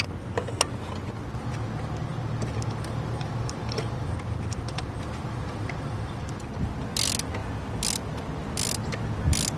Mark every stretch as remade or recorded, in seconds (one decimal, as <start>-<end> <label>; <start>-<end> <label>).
0.0-2.1 recorded; 2.1-6.4 remade; 6.4-9.6 recorded